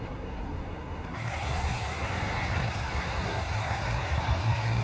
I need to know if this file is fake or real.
fake